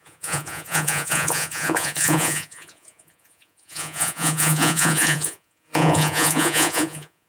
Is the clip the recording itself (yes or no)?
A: no